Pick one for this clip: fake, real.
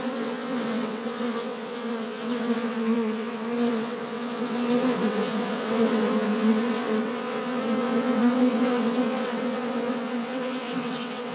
fake